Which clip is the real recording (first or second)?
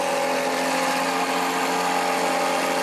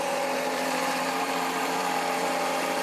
first